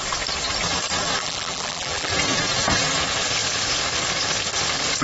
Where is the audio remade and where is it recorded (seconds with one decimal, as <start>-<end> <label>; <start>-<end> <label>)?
0.0-1.2 recorded; 1.2-2.1 remade; 2.1-5.0 recorded